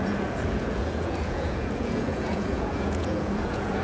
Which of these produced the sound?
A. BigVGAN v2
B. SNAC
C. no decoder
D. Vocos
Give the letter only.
D